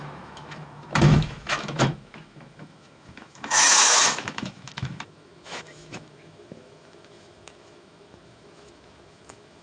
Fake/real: fake